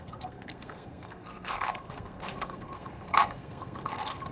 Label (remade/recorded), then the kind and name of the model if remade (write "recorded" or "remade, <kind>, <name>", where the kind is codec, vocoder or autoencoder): remade, codec, SNAC